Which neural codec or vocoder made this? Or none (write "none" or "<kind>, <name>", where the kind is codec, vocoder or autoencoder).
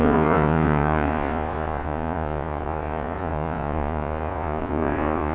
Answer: vocoder, Vocos